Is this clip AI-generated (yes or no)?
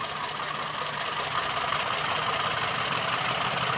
no